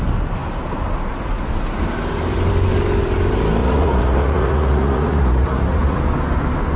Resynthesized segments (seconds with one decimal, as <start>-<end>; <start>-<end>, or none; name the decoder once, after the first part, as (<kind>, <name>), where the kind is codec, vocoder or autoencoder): 3.6-6.0 (vocoder, Vocos)